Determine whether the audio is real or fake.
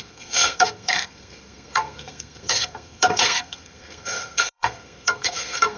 fake